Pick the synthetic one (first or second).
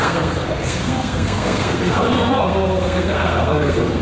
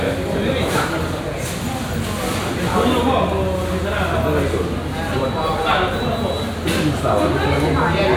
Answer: first